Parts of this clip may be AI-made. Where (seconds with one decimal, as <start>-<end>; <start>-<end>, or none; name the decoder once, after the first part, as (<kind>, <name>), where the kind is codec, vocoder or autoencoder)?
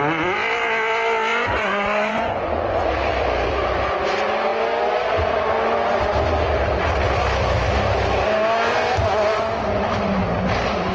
1.3-2.9 (vocoder, Vocos)